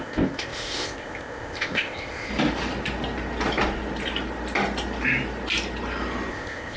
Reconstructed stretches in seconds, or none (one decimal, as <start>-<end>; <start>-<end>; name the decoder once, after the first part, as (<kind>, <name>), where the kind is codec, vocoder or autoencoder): 0.0-2.3 (codec, ZipCodec); 6.3-6.8